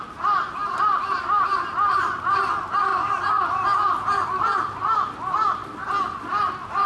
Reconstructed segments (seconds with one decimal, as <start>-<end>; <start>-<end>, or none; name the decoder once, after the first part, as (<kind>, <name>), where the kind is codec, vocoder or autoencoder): 0.6-1.4 (vocoder, BigVGAN v2); 2.9-5.1; 5.6-6.3